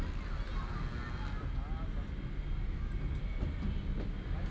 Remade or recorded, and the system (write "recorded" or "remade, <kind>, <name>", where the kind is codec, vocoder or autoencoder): recorded